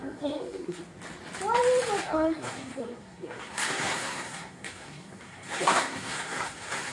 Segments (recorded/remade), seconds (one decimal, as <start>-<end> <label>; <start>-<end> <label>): 0.0-0.8 remade; 0.8-2.0 recorded; 2.0-6.9 remade